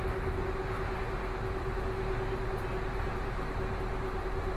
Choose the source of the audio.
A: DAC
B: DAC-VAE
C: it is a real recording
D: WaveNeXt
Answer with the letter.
C